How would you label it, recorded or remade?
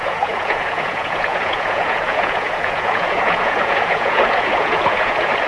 remade